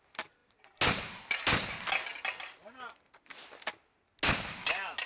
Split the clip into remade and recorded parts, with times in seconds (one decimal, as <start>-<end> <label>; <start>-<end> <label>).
0.0-5.1 recorded